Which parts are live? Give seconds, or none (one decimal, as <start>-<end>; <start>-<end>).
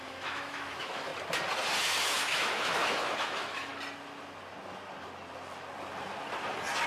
1.1-1.8; 3.7-6.9